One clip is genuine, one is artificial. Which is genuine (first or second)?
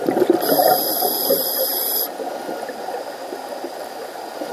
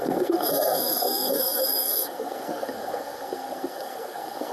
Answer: first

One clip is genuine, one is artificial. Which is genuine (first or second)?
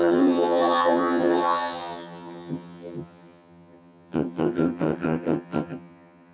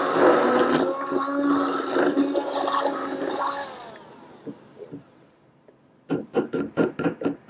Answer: second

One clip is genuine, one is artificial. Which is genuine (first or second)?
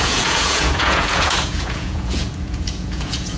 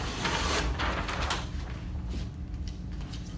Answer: second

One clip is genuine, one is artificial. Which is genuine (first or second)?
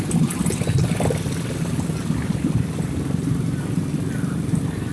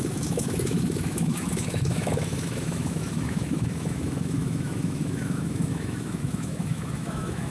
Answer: first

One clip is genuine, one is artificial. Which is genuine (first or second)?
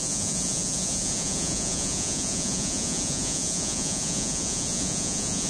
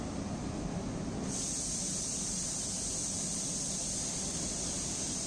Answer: second